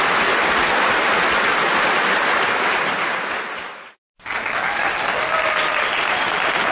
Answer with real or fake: real